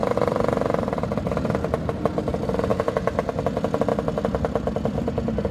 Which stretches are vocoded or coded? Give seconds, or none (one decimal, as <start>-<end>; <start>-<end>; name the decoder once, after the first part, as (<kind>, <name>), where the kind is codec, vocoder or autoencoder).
0.0-1.3 (vocoder, BigVGAN v2); 2.7-3.3